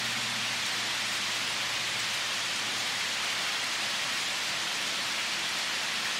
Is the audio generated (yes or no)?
no